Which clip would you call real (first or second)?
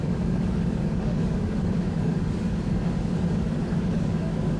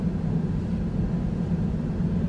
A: second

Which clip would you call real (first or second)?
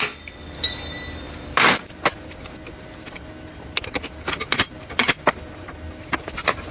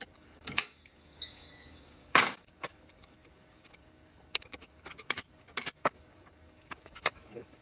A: first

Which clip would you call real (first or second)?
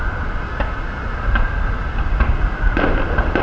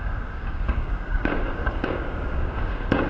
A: first